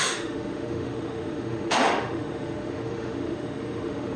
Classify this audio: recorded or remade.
remade